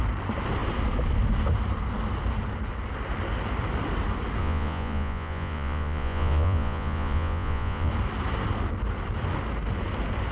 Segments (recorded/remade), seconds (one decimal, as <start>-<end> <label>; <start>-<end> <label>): 0.0-4.4 recorded; 4.4-7.9 remade; 7.9-10.3 recorded